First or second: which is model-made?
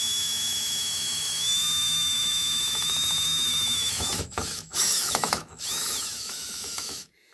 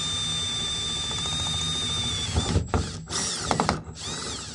first